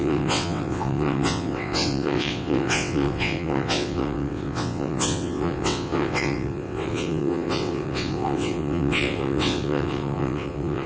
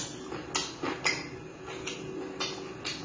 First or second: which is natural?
second